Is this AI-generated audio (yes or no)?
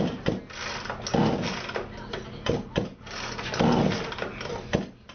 no